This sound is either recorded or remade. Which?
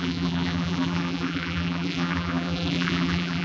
remade